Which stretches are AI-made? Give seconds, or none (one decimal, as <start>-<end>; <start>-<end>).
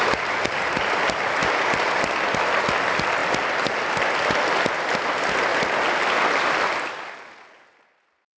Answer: 1.4-2.0; 3.2-3.9